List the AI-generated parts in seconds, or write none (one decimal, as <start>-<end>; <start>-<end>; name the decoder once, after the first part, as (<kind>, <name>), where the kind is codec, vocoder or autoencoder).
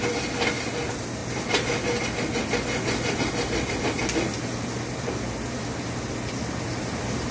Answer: none